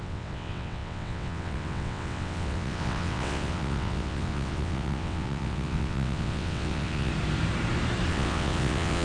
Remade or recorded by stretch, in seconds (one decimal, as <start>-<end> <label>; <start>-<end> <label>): 0.0-7.1 remade; 7.1-8.1 recorded; 8.1-9.0 remade

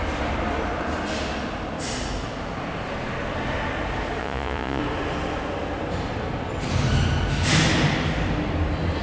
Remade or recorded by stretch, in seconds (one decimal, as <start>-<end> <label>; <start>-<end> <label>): 0.0-4.2 recorded; 4.2-4.8 remade; 4.8-9.0 recorded

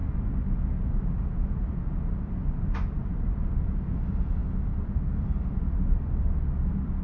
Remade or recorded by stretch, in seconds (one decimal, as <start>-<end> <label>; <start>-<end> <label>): 0.0-7.0 recorded

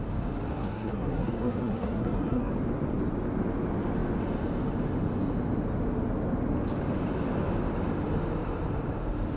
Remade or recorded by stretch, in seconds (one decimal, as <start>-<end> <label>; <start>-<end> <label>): 0.0-0.5 recorded; 0.5-2.5 remade; 2.5-9.4 recorded

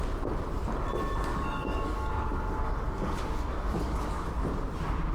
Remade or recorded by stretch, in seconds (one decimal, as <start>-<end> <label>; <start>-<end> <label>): 0.0-1.3 recorded; 1.3-4.4 remade; 4.4-5.1 recorded

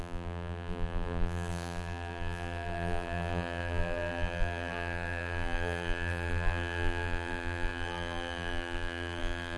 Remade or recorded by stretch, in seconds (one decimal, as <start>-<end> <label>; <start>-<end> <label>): 0.0-9.6 remade

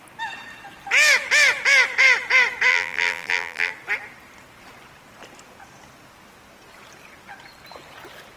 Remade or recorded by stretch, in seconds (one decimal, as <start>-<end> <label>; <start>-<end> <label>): 0.0-2.7 recorded; 2.7-3.7 remade; 3.7-8.4 recorded

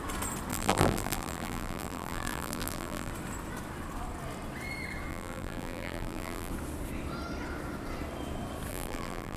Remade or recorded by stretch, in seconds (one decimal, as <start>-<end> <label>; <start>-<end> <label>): 0.0-0.5 recorded; 0.5-3.1 remade; 3.1-5.1 recorded; 5.1-6.5 remade; 6.5-8.7 recorded; 8.7-9.4 remade